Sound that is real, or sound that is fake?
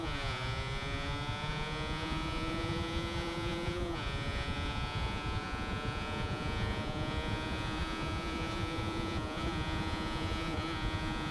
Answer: fake